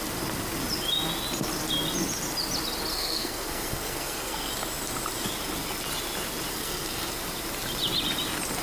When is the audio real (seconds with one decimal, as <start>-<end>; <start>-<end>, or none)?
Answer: 0.0-2.9; 4.5-6.5; 7.1-8.6